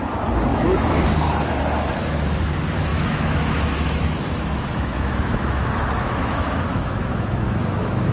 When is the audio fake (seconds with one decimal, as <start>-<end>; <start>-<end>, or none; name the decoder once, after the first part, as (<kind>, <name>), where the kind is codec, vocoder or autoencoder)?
0.5-1.0 (autoencoder, DAC-VAE); 2.9-8.1